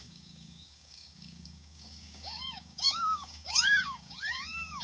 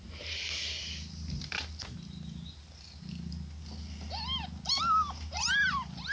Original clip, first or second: second